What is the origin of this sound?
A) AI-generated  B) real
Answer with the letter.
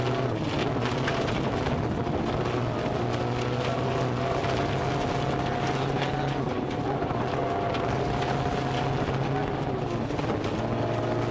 B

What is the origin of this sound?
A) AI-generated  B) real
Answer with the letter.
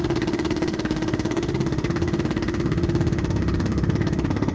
A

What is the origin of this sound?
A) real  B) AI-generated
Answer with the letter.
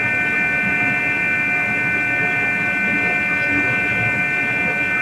A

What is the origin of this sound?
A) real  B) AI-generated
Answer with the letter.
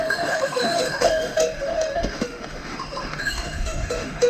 B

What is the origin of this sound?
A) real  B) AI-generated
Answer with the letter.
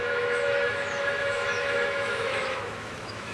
B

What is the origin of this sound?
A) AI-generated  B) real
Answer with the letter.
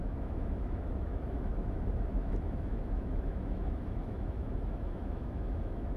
A